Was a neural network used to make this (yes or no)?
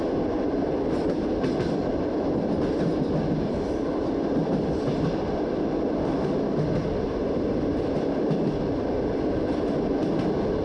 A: no